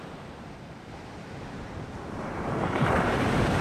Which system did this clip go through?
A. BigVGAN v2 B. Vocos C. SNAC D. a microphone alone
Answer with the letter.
A